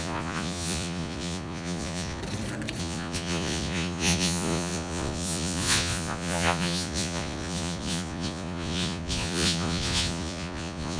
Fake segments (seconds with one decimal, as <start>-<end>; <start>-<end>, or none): 0.0-2.2; 2.8-11.0